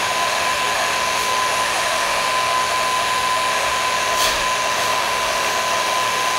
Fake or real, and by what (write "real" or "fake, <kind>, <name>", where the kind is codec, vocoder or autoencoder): fake, autoencoder, DAC-VAE